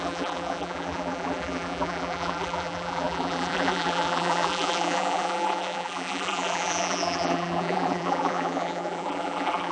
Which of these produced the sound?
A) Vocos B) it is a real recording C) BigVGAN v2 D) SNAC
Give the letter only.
C